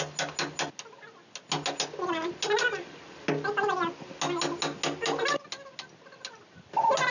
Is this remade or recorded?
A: recorded